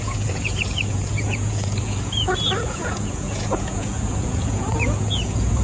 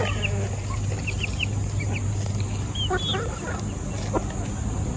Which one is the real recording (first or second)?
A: second